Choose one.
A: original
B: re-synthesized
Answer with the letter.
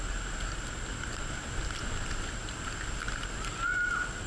A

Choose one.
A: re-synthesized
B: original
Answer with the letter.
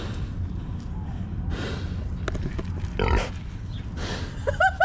B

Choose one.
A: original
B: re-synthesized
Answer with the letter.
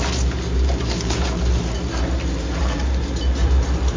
A